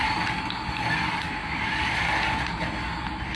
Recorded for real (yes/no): yes